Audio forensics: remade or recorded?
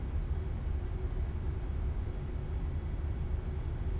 recorded